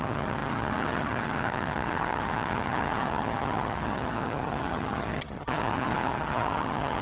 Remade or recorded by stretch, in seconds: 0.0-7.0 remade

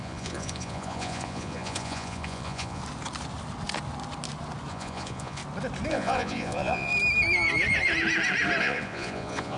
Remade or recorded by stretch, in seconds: 0.0-2.8 remade; 2.8-4.7 recorded; 4.7-5.4 remade; 5.4-5.9 recorded; 5.9-6.9 remade; 6.9-8.6 recorded; 8.6-9.6 remade

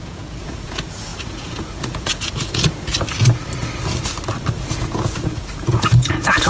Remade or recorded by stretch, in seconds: 0.0-2.9 remade; 2.9-4.7 recorded; 4.7-6.5 remade

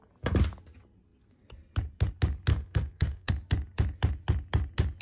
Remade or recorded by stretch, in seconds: 0.0-2.5 recorded; 2.5-3.3 remade; 3.3-5.0 recorded

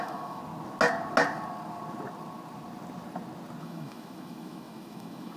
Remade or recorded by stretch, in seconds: 0.0-0.4 remade; 0.4-3.6 recorded; 3.6-5.4 remade